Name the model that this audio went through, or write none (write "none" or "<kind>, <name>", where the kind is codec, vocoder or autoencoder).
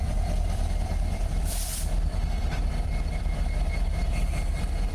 vocoder, BigVGAN v2